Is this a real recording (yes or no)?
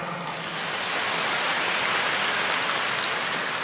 yes